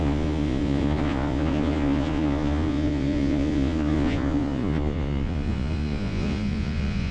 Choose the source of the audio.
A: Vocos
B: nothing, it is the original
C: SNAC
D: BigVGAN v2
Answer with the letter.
A